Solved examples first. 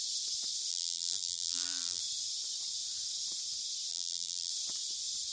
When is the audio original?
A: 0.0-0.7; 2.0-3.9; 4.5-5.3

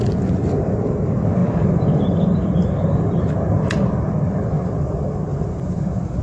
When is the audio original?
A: 0.0-1.4; 3.2-5.3

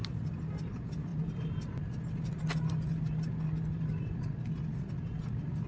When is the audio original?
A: 0.0-5.7

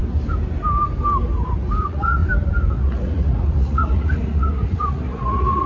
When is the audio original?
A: 0.0-1.8; 2.2-2.7

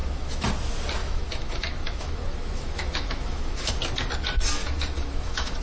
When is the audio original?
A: 0.5-1.0; 3.7-4.6